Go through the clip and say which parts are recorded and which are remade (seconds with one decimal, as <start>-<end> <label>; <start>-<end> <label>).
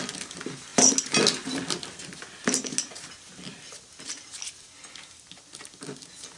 0.0-6.4 recorded